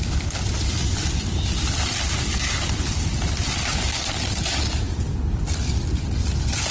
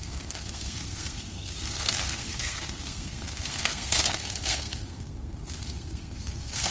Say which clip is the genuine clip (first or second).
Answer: first